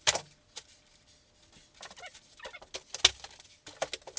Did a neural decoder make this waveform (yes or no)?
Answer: no